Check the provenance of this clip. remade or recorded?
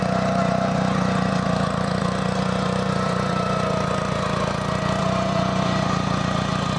remade